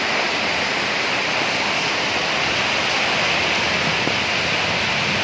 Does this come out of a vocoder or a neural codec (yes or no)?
yes